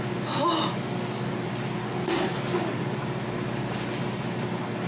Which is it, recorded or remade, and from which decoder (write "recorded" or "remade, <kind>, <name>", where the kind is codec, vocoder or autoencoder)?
recorded